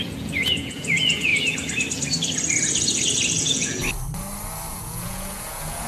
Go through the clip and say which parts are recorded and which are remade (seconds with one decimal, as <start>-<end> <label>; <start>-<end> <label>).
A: 0.0-1.3 remade; 1.3-3.4 recorded; 3.4-3.8 remade; 3.8-4.7 recorded; 4.7-5.9 remade